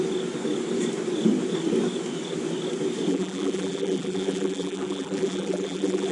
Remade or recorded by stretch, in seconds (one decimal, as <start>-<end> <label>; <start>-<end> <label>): 0.0-3.1 recorded; 3.1-6.1 remade